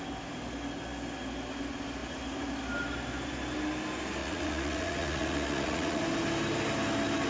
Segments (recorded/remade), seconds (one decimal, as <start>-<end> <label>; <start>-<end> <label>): 0.0-4.2 recorded; 4.2-6.0 remade; 6.0-7.3 recorded